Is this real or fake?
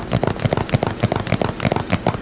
real